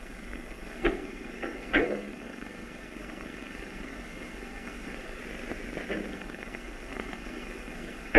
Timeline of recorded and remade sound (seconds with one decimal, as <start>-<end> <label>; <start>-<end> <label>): 0.0-5.2 remade; 5.2-6.1 recorded; 6.1-8.2 remade